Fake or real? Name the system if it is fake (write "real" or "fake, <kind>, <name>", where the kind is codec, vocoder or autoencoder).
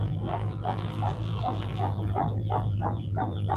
fake, vocoder, BigVGAN v2